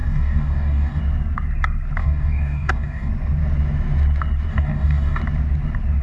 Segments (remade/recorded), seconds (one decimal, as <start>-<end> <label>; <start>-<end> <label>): 0.0-1.0 remade; 1.0-2.0 recorded; 2.0-3.1 remade; 3.1-4.5 recorded; 4.5-5.2 remade; 5.2-6.0 recorded